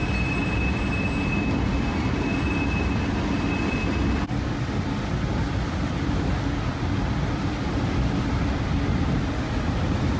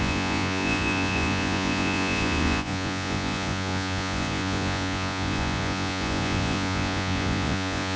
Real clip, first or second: first